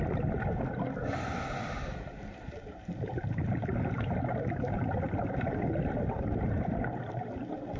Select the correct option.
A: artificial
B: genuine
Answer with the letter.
B